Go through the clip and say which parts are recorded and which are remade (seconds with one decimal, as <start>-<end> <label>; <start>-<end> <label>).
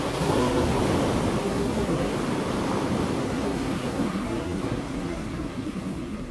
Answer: 0.0-0.8 remade; 0.8-1.4 recorded; 1.4-2.1 remade; 2.1-3.2 recorded; 3.2-6.3 remade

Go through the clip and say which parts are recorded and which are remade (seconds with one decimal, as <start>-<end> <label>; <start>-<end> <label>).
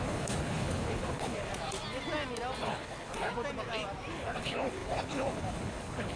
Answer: 0.0-1.5 remade; 1.5-2.6 recorded; 2.6-3.3 remade; 3.3-4.1 recorded; 4.1-6.2 remade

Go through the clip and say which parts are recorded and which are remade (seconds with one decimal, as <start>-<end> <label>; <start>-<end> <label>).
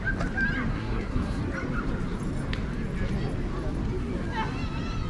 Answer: 0.0-0.7 recorded; 0.7-1.4 remade; 1.4-5.1 recorded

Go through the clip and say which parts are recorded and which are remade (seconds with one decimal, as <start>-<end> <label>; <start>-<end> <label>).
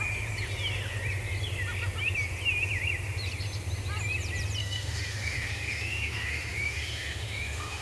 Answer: 0.0-4.6 recorded; 4.6-7.8 remade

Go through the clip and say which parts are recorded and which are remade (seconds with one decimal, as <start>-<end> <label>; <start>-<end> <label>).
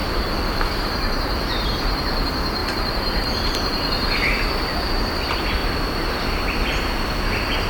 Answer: 0.0-0.9 remade; 0.9-2.6 recorded; 2.6-4.9 remade; 4.9-7.7 recorded